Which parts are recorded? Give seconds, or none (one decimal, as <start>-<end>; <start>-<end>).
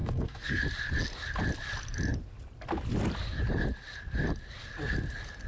0.6-5.5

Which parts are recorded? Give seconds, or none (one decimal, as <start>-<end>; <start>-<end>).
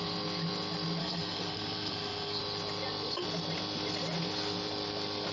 0.0-1.0; 2.4-5.3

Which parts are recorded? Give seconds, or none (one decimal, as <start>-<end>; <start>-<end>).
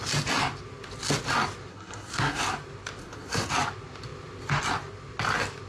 0.0-1.7; 2.4-3.0; 3.5-5.7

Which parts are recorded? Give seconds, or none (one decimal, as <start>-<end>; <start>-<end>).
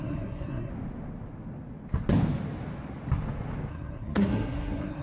0.7-3.7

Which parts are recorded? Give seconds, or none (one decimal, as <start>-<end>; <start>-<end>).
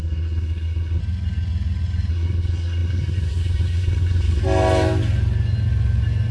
1.0-2.1; 4.4-6.3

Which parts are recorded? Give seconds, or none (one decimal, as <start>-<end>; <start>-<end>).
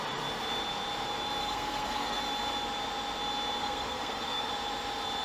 0.0-1.4; 2.2-3.6; 4.5-5.2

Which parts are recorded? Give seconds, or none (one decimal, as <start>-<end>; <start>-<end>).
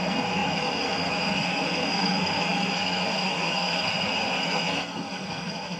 none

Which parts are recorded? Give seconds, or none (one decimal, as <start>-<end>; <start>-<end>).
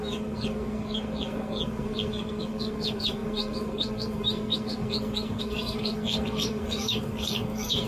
none